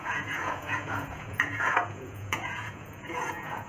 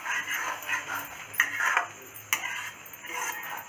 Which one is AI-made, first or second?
first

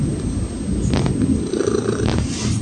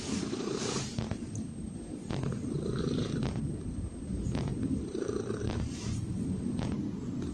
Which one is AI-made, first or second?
second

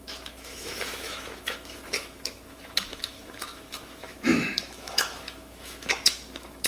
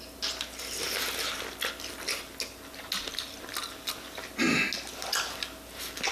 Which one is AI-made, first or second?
first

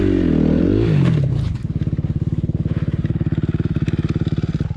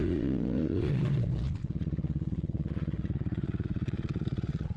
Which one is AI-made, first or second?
second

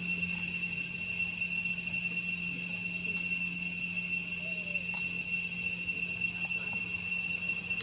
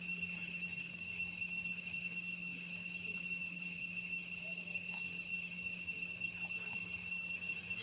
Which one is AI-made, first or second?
second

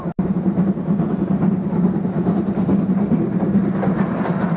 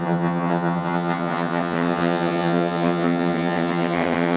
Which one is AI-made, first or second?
second